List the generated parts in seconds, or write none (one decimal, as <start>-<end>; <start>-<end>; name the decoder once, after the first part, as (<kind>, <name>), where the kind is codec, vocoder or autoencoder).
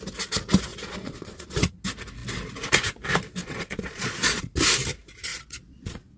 0.7-1.7 (vocoder, Vocos); 3.4-4.5; 5.3-6.2